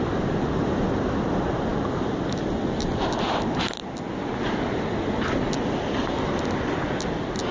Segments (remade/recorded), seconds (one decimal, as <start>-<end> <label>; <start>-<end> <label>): 0.0-7.5 recorded